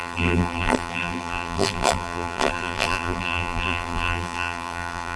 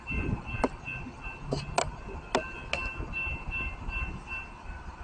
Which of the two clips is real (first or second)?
second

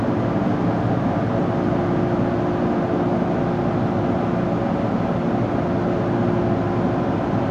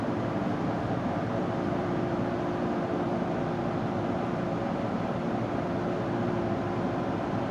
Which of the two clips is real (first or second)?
first